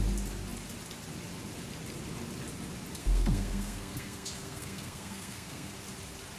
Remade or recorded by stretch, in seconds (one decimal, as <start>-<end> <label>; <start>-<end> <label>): 0.0-3.0 recorded; 3.0-5.7 remade; 5.7-6.4 recorded